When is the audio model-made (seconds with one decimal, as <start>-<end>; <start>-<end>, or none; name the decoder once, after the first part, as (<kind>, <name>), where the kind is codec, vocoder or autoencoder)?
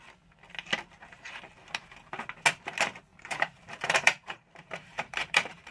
3.1-5.7 (vocoder, BigVGAN v2)